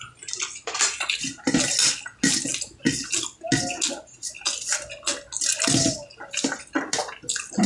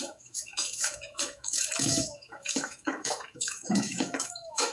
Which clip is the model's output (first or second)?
second